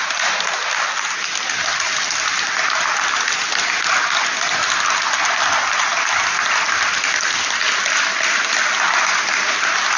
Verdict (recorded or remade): recorded